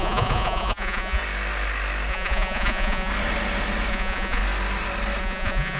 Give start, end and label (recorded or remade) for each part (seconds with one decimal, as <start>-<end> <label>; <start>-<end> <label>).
0.0-1.2 remade; 1.2-2.1 recorded; 2.1-3.1 remade; 3.1-3.9 recorded; 3.9-4.4 remade; 4.4-5.2 recorded; 5.2-5.8 remade